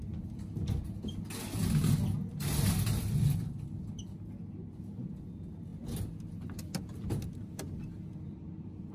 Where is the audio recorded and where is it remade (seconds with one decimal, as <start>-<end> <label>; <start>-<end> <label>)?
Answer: 0.0-8.9 recorded